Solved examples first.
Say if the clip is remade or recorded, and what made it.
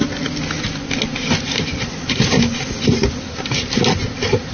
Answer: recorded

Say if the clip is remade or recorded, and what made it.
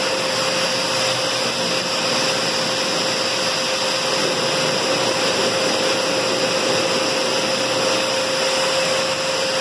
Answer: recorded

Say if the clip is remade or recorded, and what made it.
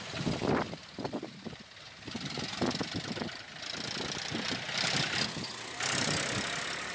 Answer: recorded